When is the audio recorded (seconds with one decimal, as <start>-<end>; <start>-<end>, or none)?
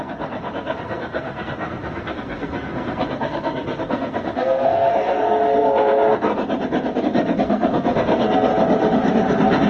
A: 6.3-7.0; 8.5-9.7